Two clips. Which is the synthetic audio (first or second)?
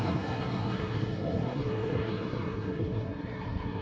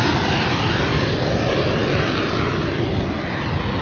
first